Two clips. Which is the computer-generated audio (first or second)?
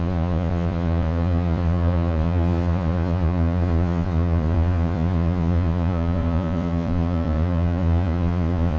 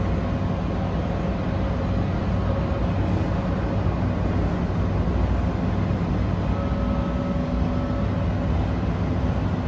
first